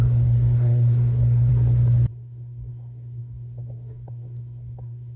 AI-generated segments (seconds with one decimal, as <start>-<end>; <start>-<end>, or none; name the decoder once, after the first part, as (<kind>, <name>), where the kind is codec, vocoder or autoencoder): 0.0-1.5 (codec, SNAC); 2.1-5.2